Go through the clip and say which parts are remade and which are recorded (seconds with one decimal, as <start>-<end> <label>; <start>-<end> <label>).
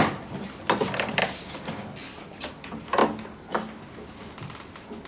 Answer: 0.0-5.1 recorded